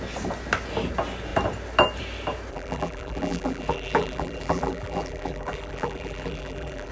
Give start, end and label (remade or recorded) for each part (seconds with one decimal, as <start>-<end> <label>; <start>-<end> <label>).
0.0-2.5 recorded; 2.5-6.9 remade